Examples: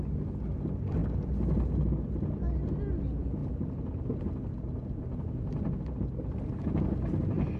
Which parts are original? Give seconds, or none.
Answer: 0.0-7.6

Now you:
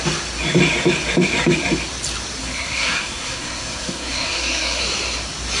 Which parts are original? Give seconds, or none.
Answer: 0.0-2.4; 4.8-5.6

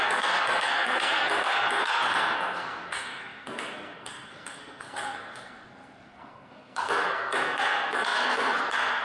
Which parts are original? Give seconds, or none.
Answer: none

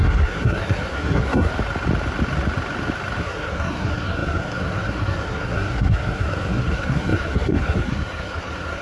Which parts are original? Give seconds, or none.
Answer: 1.5-3.2

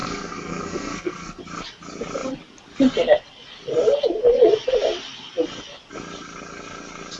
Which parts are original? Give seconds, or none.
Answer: 1.4-7.2